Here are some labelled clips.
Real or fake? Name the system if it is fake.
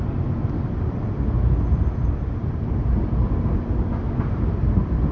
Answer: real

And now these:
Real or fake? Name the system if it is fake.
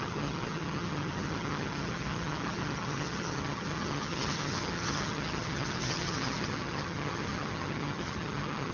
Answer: fake, vocoder, HiFi-GAN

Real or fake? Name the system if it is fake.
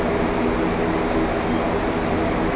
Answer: real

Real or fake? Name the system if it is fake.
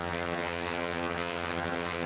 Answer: fake, vocoder, HiFi-GAN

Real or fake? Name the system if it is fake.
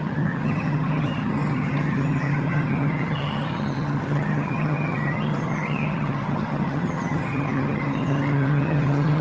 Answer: fake, vocoder, HiFi-GAN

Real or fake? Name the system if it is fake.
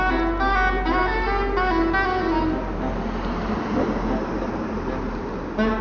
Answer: real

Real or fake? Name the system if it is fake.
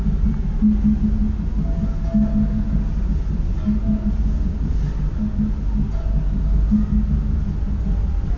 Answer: real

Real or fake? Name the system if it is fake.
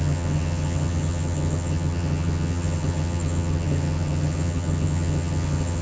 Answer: fake, vocoder, HiFi-GAN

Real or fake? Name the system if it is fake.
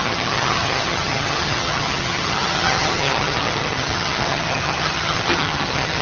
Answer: fake, vocoder, HiFi-GAN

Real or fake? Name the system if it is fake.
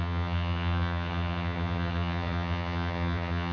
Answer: fake, vocoder, HiFi-GAN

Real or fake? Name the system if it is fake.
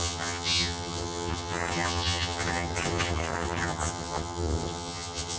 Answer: fake, vocoder, HiFi-GAN